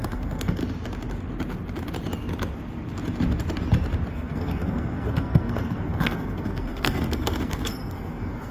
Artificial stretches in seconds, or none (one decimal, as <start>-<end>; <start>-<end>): 0.0-0.6; 4.1-8.5

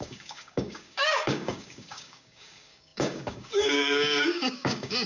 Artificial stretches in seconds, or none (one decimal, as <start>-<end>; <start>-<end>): 0.0-5.1

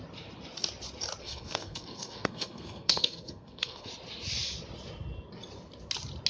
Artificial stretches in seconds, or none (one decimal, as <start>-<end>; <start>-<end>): 1.2-3.9

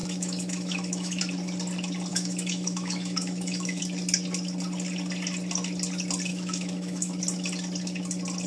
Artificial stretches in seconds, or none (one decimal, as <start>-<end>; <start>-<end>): 0.0-1.2; 2.1-3.8; 6.3-7.2